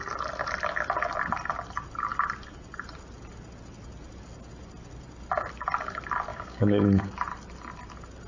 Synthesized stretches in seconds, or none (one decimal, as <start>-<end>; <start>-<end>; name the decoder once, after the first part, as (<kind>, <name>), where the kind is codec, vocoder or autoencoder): 6.3-7.1 (codec, DAC)